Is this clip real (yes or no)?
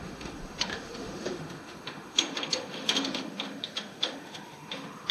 no